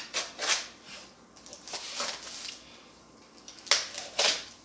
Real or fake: real